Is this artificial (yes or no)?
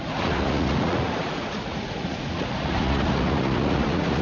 yes